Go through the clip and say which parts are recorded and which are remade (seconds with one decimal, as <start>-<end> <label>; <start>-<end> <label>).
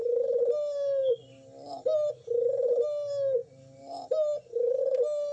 0.0-5.3 recorded